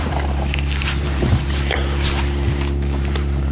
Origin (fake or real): fake